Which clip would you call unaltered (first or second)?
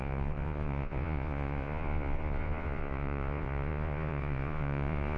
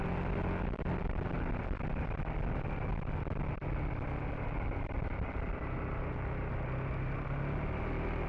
second